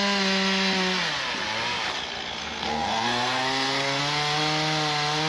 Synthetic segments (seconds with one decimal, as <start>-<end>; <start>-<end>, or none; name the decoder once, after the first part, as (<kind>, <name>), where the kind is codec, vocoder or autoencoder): 2.4-4.0 (codec, SNAC)